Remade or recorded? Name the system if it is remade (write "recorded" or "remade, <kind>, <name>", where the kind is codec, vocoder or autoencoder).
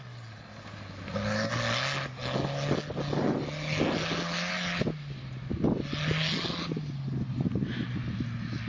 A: recorded